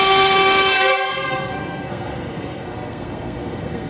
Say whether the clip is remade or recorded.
remade